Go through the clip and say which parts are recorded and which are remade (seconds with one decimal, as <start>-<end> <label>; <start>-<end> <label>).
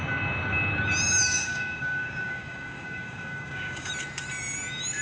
0.0-1.2 recorded; 1.2-3.9 remade; 3.9-5.0 recorded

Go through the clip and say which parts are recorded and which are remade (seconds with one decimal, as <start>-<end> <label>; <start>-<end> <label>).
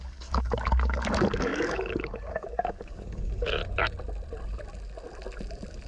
0.0-3.6 remade; 3.6-5.9 recorded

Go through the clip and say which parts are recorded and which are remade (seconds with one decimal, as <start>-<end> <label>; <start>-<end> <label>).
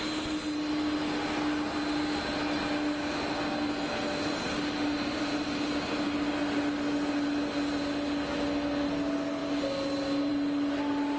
0.0-11.2 recorded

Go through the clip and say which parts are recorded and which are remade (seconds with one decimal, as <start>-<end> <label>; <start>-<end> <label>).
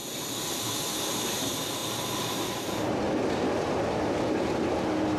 0.0-5.2 recorded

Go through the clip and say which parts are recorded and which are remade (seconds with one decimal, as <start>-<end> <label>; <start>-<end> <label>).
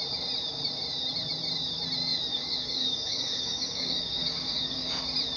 0.0-2.3 recorded; 2.3-5.0 remade; 5.0-5.4 recorded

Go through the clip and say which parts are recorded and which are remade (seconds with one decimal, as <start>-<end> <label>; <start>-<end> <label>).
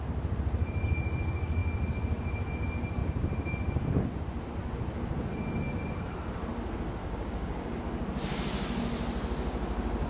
0.0-7.0 recorded; 7.0-7.8 remade; 7.8-10.1 recorded